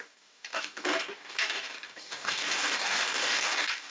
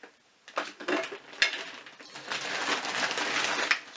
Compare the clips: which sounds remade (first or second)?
first